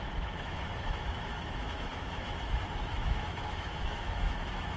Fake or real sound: fake